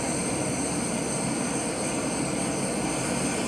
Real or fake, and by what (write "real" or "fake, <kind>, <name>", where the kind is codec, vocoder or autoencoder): real